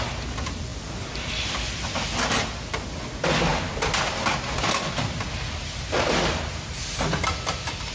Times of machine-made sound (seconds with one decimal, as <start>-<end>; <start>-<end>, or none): none